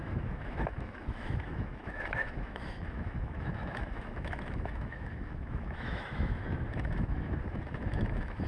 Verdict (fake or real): fake